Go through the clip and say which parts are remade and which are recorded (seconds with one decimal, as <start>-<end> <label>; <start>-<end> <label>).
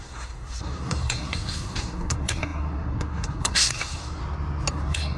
0.0-4.2 remade; 4.2-4.7 recorded; 4.7-5.2 remade